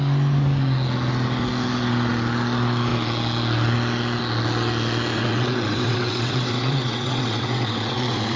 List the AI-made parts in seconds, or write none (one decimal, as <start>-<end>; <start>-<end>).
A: 5.1-8.4